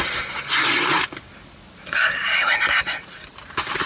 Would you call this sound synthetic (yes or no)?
no